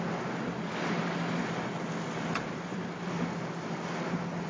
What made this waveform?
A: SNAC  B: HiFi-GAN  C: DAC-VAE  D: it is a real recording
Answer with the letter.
D